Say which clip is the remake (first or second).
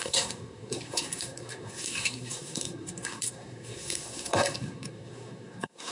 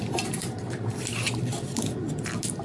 first